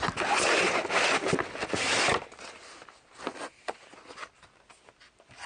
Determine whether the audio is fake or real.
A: real